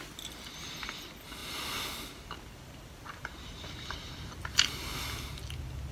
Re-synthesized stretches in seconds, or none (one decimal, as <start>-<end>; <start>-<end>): none

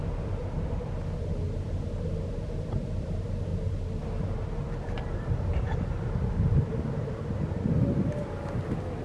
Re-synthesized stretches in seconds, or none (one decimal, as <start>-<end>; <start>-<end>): 0.4-1.2; 3.5-4.0

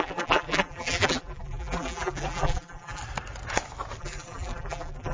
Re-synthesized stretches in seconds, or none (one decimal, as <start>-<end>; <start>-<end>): 0.0-3.0; 4.0-5.1

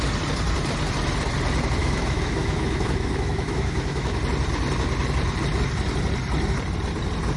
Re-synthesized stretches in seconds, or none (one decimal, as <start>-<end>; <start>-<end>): 1.8-4.2

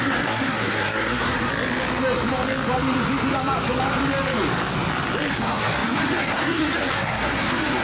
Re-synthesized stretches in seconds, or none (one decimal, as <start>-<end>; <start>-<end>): 0.0-1.5; 5.3-7.8

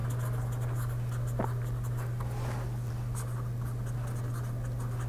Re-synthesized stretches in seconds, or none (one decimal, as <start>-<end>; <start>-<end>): none

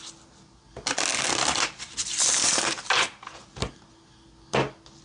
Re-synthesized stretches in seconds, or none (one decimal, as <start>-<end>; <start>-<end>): 1.1-3.8

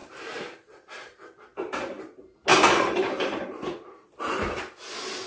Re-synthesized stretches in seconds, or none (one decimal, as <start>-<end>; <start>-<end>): 2.5-4.2